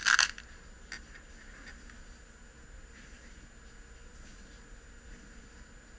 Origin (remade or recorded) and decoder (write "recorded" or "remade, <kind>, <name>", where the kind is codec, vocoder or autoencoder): recorded